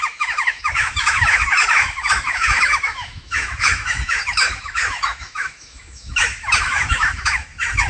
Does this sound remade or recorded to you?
remade